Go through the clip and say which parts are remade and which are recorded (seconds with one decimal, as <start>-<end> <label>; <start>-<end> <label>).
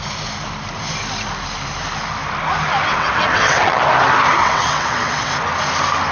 0.0-2.9 recorded; 2.9-3.8 remade; 3.8-4.4 recorded; 4.4-5.3 remade; 5.3-6.1 recorded